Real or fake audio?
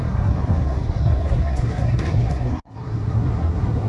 fake